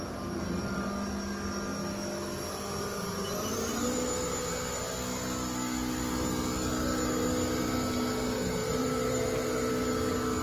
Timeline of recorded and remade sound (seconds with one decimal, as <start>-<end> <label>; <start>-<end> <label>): 0.0-8.6 recorded; 8.6-9.7 remade; 9.7-10.4 recorded